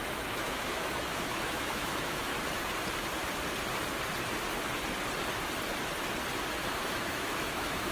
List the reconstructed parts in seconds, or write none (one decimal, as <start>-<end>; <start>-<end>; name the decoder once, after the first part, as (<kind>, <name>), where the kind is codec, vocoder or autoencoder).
0.0-2.3 (autoencoder, DAC-VAE); 6.8-7.9

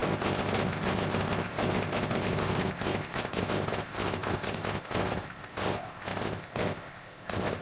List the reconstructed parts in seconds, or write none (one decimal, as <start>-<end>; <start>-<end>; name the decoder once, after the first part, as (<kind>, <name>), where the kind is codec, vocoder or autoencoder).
0.0-7.6 (codec, ZipCodec)